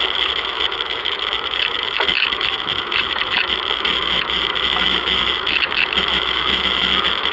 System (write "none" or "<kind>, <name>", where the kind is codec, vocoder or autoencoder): autoencoder, DAC-VAE